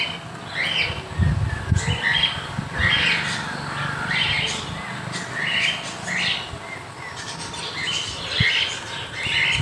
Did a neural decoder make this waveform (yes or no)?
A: no